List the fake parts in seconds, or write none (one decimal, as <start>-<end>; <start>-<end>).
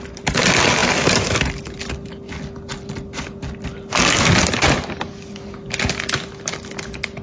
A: none